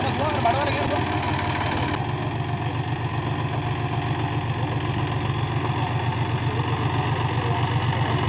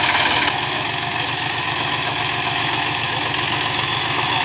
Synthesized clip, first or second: second